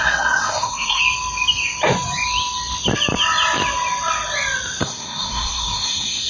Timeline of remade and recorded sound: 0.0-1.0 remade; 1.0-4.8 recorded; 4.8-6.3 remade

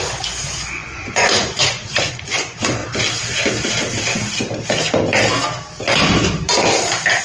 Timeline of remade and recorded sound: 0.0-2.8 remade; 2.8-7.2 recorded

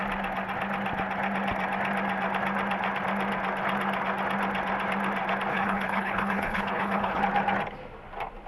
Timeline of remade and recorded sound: 0.0-5.5 recorded; 5.5-7.2 remade; 7.2-8.5 recorded